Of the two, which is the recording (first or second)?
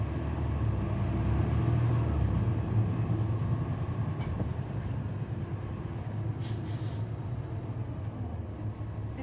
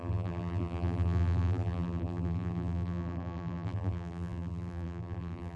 first